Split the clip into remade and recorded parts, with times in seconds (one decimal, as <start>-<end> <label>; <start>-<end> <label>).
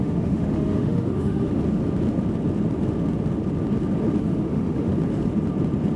0.0-1.5 remade; 1.5-4.2 recorded; 4.2-4.9 remade; 4.9-6.0 recorded